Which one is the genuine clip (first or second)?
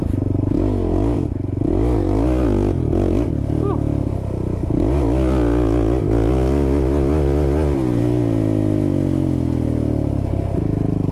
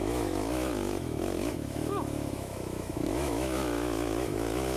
first